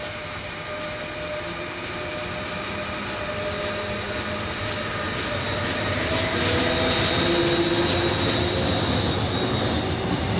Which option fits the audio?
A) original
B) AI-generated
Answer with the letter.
A